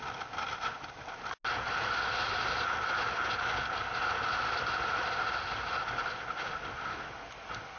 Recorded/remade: recorded